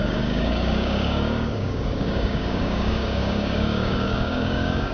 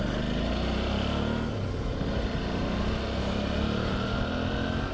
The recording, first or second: second